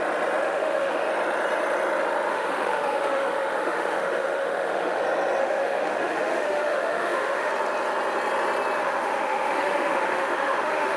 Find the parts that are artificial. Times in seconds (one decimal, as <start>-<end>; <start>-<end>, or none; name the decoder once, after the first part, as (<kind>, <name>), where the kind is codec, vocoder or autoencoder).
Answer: 0.4-1.1 (autoencoder, DAC-VAE); 2.3-5.0; 5.4-7.5; 8.8-11.0